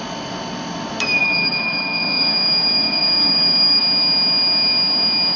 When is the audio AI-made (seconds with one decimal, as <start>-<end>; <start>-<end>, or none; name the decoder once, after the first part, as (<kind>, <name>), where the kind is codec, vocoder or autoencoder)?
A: 1.2-3.8 (codec, DAC)